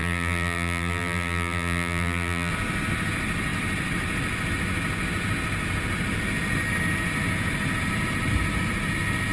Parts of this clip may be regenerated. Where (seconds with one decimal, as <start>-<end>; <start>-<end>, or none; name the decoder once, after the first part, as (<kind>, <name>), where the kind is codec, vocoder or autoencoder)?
0.0-2.5 (vocoder, BigVGAN v2)